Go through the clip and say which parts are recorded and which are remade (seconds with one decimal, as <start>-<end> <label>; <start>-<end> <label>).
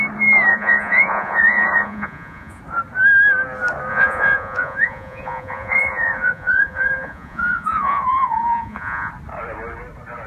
0.0-0.5 recorded; 0.5-2.6 remade; 2.6-3.9 recorded; 3.9-9.1 remade; 9.1-10.3 recorded